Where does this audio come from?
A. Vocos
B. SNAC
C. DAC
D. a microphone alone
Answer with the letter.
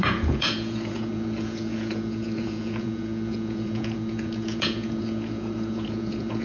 A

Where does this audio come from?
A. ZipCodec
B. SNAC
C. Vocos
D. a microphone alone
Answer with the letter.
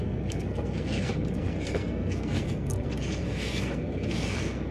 B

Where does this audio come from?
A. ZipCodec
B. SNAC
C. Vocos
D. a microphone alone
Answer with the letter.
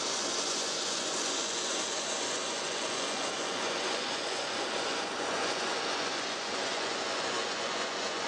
C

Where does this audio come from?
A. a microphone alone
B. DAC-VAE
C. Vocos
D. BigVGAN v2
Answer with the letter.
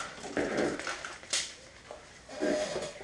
A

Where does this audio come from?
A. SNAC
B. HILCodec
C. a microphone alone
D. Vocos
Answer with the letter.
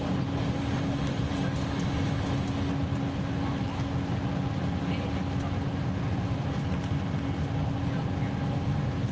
C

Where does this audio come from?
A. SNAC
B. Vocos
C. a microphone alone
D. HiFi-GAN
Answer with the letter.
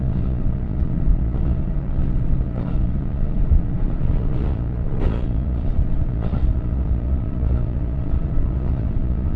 B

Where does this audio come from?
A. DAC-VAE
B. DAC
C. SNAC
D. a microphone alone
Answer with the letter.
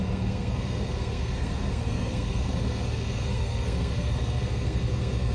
C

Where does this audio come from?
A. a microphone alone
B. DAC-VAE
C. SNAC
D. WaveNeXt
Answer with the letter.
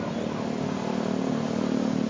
A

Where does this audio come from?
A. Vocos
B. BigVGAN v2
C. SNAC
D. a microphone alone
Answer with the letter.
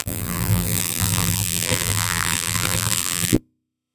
B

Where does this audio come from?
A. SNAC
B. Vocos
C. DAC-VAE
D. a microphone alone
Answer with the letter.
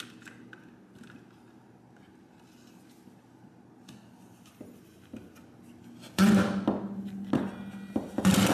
D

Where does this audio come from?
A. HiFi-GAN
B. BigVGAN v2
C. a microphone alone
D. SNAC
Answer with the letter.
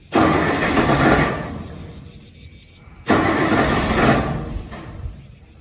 C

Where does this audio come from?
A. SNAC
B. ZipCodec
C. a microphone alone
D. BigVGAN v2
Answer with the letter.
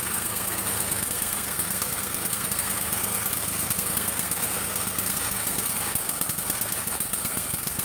A